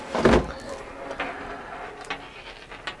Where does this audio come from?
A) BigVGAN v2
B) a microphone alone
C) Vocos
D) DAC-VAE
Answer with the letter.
B